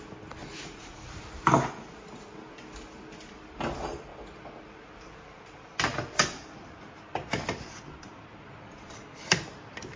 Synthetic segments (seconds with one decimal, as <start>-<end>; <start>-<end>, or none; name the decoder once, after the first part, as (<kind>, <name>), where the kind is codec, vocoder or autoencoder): 0.4-1.1 (vocoder, Vocos)

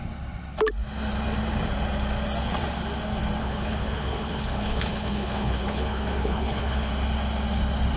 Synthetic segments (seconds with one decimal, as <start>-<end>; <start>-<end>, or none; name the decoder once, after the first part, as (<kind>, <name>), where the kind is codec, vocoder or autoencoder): 3.4-6.9 (codec, HILCodec)

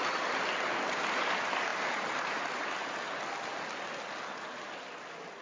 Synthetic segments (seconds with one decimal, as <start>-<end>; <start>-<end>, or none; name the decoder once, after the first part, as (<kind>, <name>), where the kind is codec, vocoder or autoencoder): none

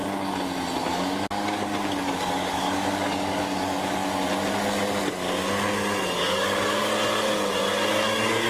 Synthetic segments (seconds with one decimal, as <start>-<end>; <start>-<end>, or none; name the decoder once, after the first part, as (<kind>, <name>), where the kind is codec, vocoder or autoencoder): 0.8-4.0 (codec, DAC); 6.2-6.9; 7.9-8.5

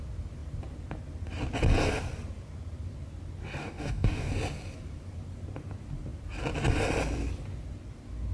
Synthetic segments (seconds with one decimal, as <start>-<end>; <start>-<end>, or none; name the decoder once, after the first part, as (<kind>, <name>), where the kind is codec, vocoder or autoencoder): 3.6-4.3 (codec, DAC)

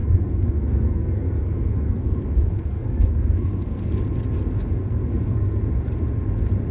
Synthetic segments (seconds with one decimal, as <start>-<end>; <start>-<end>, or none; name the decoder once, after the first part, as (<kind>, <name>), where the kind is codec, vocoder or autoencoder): 0.0-4.0 (codec, SNAC); 4.8-5.6

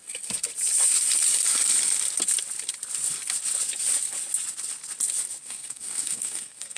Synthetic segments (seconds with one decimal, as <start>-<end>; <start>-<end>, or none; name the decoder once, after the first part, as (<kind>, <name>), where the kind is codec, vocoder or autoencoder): 5.4-6.8 (codec, SNAC)